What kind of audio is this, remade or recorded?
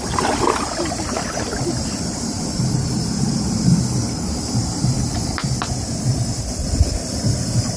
recorded